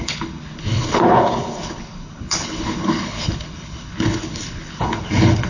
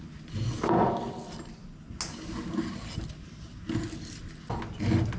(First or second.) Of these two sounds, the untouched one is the second